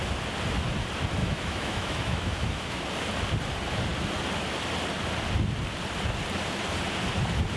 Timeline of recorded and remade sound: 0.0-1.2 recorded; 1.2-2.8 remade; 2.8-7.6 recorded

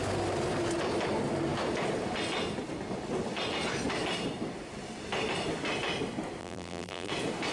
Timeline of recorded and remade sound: 0.0-6.4 recorded; 6.4-7.1 remade; 7.1-7.5 recorded

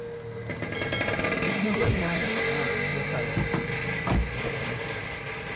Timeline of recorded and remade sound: 0.0-1.5 recorded; 1.5-2.4 remade; 2.4-5.6 recorded

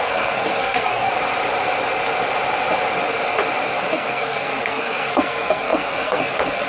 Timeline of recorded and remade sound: 0.0-1.1 remade; 1.1-3.8 recorded; 3.8-6.7 remade

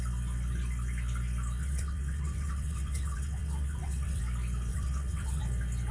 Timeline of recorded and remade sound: 0.0-1.6 recorded; 1.6-4.2 remade; 4.2-4.7 recorded; 4.7-5.4 remade; 5.4-5.9 recorded

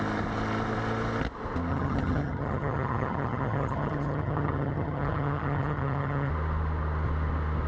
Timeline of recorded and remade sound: 0.0-1.7 recorded; 1.7-6.3 remade; 6.3-7.7 recorded

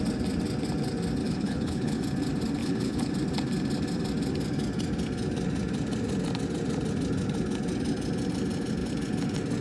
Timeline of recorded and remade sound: 0.0-1.2 recorded; 1.2-2.0 remade; 2.0-2.6 recorded; 2.6-3.1 remade; 3.1-9.6 recorded